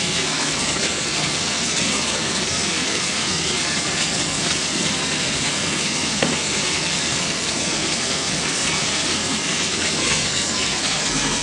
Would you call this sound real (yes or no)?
no